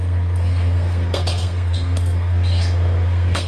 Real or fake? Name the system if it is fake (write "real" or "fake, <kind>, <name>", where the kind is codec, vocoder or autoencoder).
fake, codec, SNAC